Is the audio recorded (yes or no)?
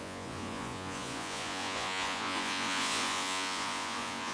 no